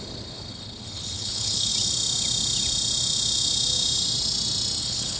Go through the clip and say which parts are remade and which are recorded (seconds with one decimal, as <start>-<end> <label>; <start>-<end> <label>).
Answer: 0.0-1.7 remade; 1.7-4.8 recorded; 4.8-5.2 remade